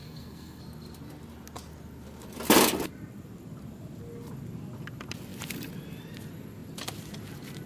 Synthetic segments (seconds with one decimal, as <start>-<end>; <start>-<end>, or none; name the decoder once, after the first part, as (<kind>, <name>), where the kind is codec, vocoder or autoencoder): 0.0-0.6 (codec, SNAC)